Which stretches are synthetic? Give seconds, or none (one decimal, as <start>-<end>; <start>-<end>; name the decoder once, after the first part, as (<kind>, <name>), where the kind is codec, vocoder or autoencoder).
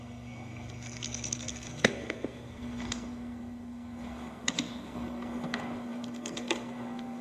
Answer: 0.0-7.2 (codec, SNAC)